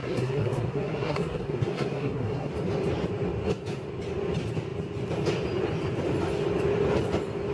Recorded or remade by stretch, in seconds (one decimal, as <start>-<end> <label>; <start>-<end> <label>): 0.0-2.5 remade; 2.5-7.5 recorded